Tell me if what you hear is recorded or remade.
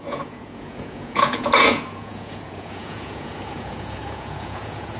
remade